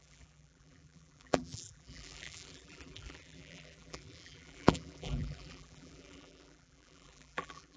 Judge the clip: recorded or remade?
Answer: remade